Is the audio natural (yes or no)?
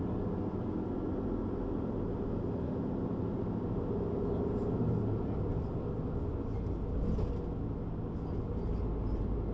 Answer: yes